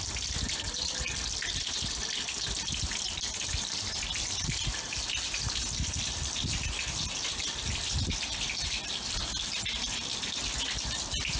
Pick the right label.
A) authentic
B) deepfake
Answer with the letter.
A